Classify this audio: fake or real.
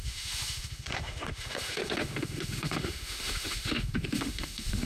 fake